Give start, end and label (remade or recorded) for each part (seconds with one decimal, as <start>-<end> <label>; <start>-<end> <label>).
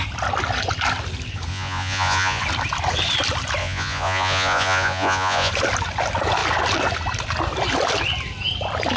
0.0-1.5 recorded; 1.5-2.4 remade; 2.4-3.6 recorded; 3.6-5.5 remade; 5.5-9.0 recorded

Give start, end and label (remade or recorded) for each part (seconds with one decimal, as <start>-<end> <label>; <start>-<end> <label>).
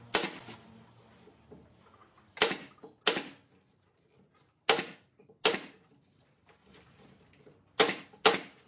0.0-8.7 recorded